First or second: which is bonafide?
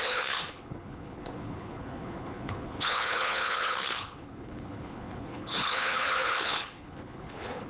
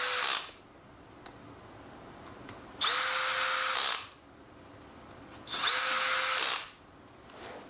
second